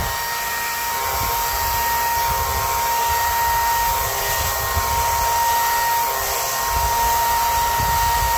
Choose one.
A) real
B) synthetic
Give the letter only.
A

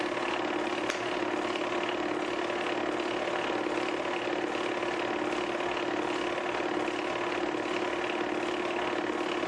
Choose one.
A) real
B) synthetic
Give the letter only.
A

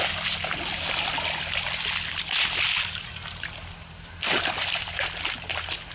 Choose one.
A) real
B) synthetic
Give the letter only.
A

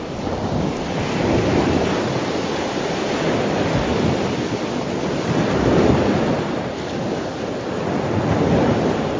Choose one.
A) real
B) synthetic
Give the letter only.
A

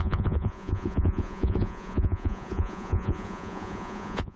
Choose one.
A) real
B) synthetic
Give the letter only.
B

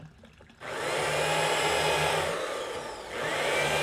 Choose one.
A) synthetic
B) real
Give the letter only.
B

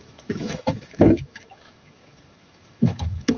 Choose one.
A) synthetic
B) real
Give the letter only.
A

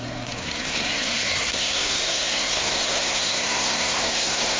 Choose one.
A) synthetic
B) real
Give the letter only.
A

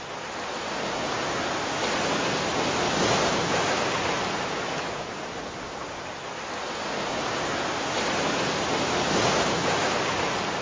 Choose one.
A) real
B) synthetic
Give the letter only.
A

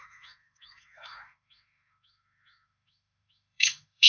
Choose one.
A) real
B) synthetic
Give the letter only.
B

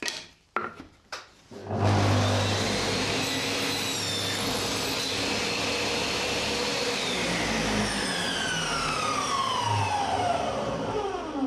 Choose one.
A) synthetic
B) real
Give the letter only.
B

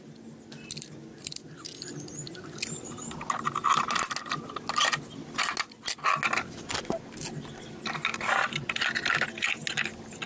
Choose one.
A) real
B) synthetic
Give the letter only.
A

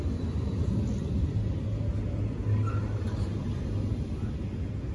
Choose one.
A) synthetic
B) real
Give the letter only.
B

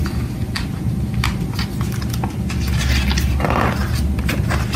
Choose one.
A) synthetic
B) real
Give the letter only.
B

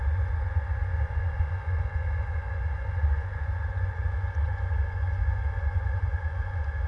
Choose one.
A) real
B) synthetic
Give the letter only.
B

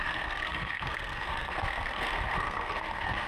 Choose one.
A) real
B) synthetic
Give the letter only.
B